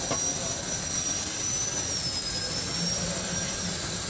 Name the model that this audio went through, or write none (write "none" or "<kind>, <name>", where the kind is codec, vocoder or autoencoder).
none